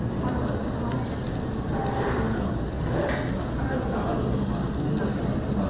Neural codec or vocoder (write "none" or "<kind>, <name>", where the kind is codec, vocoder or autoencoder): none